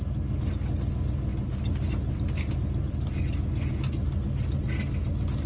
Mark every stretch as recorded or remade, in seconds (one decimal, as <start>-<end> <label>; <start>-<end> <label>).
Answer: 0.0-1.3 recorded; 1.3-4.6 remade; 4.6-5.5 recorded